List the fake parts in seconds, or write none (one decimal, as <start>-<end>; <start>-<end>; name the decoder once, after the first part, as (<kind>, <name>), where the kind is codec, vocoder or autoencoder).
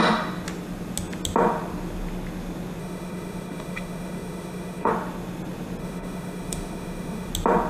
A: 2.8-4.9 (autoencoder, DAC-VAE); 5.8-7.3